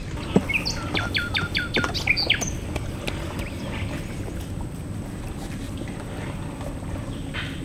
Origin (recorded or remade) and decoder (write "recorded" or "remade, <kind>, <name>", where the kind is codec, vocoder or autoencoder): recorded